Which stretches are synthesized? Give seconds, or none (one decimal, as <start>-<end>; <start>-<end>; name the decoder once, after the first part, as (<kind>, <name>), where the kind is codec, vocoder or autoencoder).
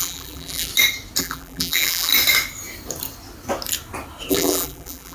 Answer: 0.0-0.7 (vocoder, BigVGAN v2); 1.2-2.1; 4.3-5.1